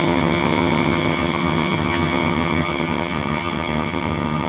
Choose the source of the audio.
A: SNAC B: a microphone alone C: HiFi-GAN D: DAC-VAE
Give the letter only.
C